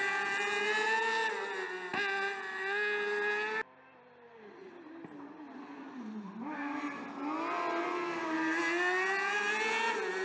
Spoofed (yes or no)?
no